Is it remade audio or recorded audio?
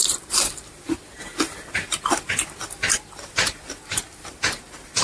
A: remade